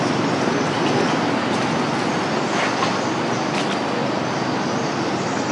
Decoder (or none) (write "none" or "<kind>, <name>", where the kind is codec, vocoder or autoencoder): none